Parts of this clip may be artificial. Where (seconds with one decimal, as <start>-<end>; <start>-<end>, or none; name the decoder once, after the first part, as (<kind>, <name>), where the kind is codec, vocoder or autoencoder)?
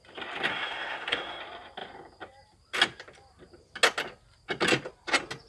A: 0.5-1.4 (codec, SNAC)